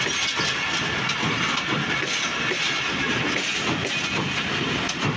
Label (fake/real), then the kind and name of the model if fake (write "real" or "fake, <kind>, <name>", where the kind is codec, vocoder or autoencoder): real